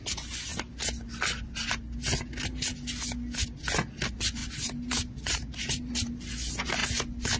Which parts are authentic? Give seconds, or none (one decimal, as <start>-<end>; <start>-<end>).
0.0-4.4; 6.1-7.4